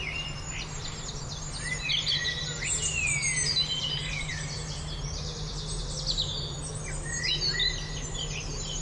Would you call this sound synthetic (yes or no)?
no